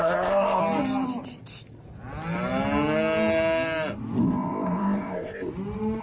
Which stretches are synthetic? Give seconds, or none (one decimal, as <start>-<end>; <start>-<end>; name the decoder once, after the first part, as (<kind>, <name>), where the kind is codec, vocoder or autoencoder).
0.0-0.6 (codec, ZipCodec); 4.2-5.5